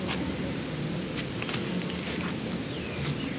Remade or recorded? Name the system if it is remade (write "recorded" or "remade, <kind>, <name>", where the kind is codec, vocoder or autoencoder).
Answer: recorded